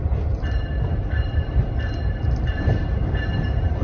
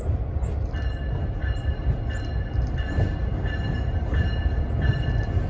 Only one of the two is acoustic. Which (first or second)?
second